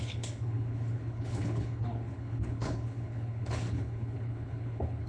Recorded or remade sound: remade